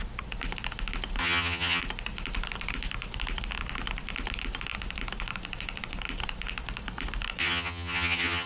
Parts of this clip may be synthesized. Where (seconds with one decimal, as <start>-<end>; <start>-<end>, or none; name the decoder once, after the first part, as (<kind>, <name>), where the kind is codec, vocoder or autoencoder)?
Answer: 1.2-1.8 (vocoder, HiFi-GAN); 7.4-8.5